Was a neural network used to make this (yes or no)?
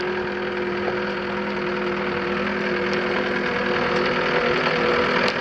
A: no